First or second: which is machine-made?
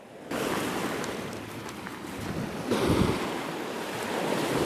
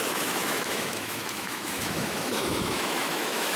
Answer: second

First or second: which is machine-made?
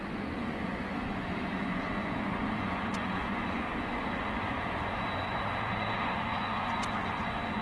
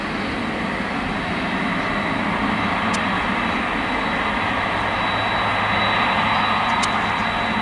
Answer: first